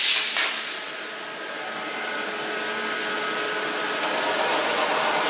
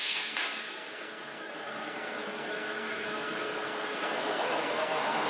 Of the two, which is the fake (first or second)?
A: second